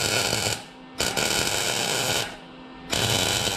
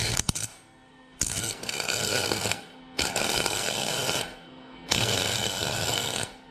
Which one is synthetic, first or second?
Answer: second